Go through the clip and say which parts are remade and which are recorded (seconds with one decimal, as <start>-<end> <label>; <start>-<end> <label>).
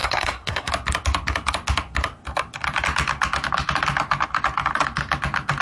0.0-0.7 remade; 0.7-5.6 recorded